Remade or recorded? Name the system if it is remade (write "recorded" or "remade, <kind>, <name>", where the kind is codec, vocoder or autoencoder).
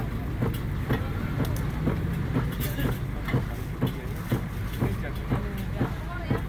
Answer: recorded